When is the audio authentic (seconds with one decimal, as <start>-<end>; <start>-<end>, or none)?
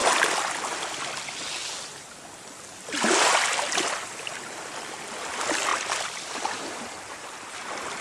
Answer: 0.0-8.0